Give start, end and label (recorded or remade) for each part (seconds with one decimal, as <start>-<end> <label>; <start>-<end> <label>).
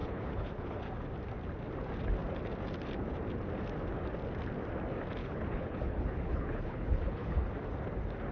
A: 0.0-0.8 remade; 0.8-5.2 recorded; 5.2-7.5 remade; 7.5-8.3 recorded